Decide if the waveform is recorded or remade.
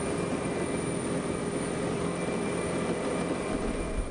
recorded